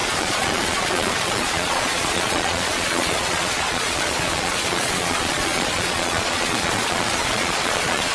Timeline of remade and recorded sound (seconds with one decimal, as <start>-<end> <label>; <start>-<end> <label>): 0.0-8.1 remade

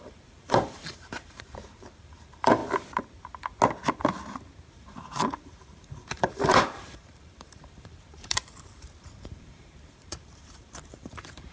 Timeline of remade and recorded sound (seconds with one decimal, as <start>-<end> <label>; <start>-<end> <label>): 0.0-2.6 remade; 2.6-4.7 recorded; 4.7-11.5 remade

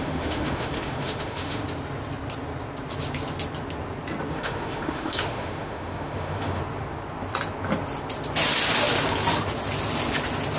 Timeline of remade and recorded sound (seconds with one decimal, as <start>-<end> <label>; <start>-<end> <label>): 0.0-1.6 remade; 1.6-4.3 recorded; 4.3-6.6 remade; 6.6-10.6 recorded

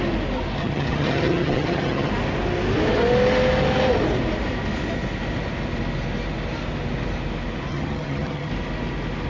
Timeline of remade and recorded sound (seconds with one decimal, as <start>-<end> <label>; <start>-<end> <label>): 0.0-0.6 recorded; 0.6-2.1 remade; 2.1-7.7 recorded; 7.7-8.5 remade; 8.5-9.3 recorded

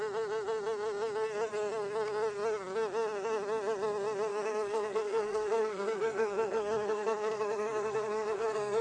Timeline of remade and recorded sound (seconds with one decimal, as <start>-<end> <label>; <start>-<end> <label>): 0.0-4.3 recorded; 4.3-8.8 remade